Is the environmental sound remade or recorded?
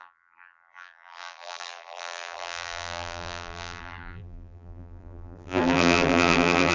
remade